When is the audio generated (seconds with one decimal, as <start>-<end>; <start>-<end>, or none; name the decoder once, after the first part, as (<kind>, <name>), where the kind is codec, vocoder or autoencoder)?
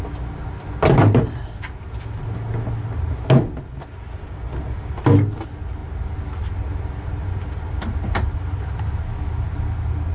none